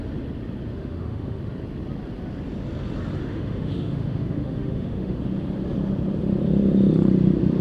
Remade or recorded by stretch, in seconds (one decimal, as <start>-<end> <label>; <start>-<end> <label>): 0.0-0.7 recorded; 0.7-1.4 remade; 1.4-3.2 recorded; 3.2-5.2 remade; 5.2-7.6 recorded